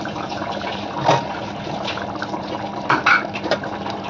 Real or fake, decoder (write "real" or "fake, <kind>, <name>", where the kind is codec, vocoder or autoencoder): real